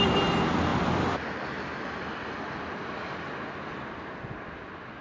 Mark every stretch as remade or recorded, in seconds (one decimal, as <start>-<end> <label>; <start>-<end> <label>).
0.0-5.0 recorded